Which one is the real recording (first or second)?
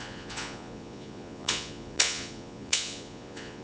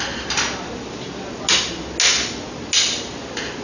second